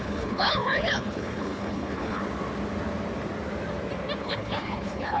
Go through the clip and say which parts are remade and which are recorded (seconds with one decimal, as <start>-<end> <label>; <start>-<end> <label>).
0.0-2.2 remade; 2.2-4.2 recorded; 4.2-5.2 remade